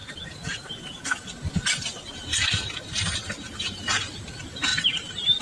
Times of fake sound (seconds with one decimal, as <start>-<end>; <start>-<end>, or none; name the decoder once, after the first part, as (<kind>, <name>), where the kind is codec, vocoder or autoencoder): 0.0-0.7 (vocoder, BigVGAN v2); 2.3-4.3; 4.7-5.4